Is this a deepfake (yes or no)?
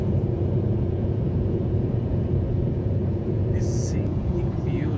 yes